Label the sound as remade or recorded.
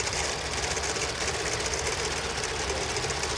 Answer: recorded